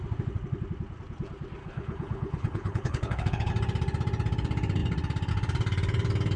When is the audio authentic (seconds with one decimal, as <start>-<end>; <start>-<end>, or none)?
0.0-1.6; 3.5-6.4